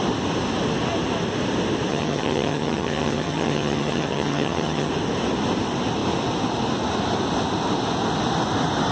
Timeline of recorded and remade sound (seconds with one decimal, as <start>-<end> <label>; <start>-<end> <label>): 0.0-1.9 recorded; 1.9-4.9 remade; 4.9-8.9 recorded